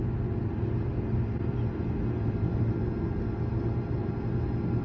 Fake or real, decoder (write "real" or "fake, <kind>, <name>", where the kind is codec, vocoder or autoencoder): real